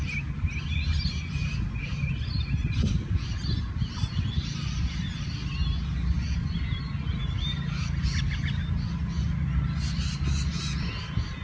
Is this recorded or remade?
recorded